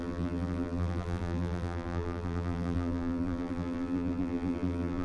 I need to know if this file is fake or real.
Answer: fake